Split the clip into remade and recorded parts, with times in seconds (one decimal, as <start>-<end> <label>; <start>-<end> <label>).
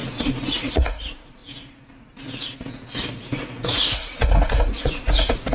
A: 0.0-1.4 remade; 1.4-3.1 recorded; 3.1-5.5 remade